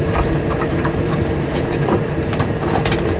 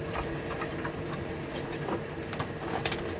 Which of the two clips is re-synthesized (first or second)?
first